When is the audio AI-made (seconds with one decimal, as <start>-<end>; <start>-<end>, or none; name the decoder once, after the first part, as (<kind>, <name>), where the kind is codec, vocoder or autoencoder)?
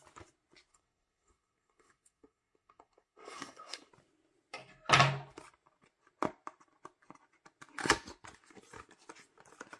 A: 0.7-3.9 (codec, SNAC)